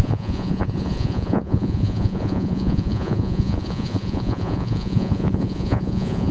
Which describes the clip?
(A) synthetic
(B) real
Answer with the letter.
A